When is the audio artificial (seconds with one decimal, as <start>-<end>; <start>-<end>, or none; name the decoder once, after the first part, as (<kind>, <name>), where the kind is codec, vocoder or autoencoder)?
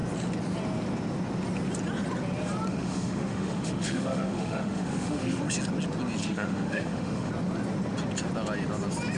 2.7-5.4 (autoencoder, DAC-VAE); 6.2-7.3